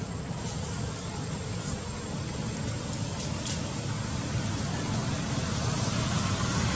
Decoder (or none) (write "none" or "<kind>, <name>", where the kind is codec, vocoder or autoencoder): none